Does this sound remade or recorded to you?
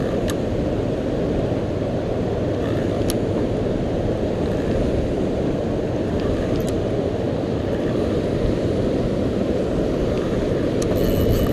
recorded